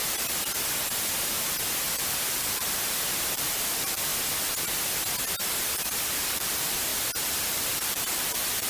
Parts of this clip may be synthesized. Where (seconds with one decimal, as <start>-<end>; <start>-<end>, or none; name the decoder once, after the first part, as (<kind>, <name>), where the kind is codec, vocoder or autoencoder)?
1.8-4.1 (vocoder, BigVGAN v2); 5.8-6.9; 7.4-8.7